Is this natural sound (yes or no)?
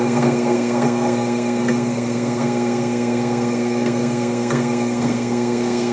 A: no